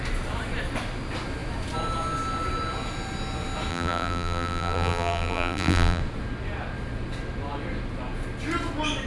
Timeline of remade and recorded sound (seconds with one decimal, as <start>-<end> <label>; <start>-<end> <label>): 0.0-3.7 recorded; 3.7-6.0 remade; 6.0-9.1 recorded